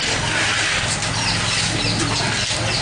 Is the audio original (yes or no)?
yes